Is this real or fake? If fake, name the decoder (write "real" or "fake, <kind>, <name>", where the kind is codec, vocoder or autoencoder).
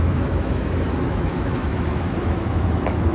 fake, autoencoder, DAC-VAE